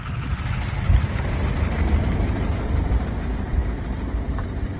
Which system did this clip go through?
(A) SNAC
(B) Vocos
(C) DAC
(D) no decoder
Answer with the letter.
D